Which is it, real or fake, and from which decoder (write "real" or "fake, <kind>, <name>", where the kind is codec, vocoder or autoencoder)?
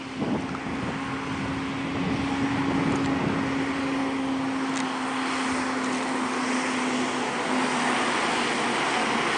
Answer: real